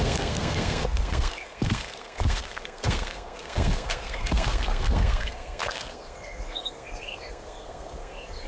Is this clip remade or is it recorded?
remade